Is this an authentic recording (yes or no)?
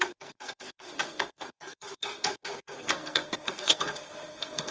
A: no